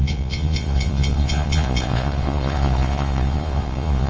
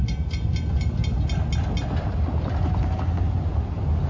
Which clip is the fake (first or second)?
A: first